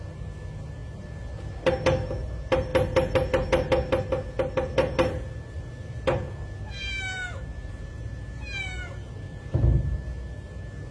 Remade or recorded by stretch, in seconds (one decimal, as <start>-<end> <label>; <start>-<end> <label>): 0.0-10.9 recorded